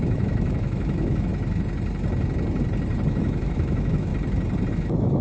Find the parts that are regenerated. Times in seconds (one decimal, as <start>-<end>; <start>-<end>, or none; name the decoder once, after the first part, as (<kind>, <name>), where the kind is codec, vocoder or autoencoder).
0.0-1.3 (autoencoder, DAC-VAE); 3.1-4.1; 4.7-5.2

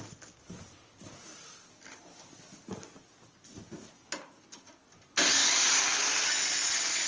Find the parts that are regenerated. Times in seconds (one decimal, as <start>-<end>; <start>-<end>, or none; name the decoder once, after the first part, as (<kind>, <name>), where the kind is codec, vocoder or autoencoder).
none

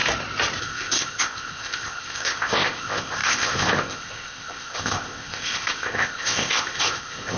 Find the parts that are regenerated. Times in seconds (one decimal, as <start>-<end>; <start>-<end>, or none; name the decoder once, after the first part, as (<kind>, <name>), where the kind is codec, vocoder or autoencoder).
0.6-7.4 (codec, ZipCodec)